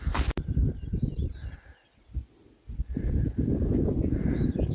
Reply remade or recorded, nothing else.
recorded